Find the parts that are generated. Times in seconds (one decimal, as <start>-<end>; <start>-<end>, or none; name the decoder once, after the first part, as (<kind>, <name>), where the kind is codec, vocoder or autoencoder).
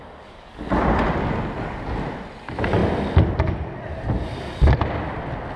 0.0-0.7 (codec, DAC)